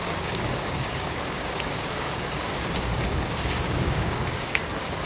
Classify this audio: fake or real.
fake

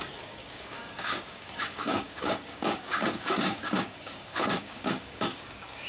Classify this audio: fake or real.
fake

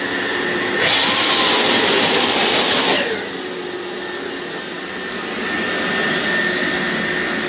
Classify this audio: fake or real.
real